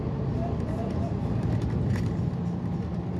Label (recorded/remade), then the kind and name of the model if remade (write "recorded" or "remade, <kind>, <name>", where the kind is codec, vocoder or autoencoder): remade, vocoder, BigVGAN v2